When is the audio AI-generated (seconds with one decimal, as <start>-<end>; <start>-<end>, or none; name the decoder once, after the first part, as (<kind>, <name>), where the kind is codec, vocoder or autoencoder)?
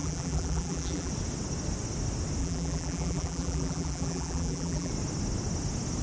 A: 0.0-1.1 (vocoder, BigVGAN v2); 2.4-4.9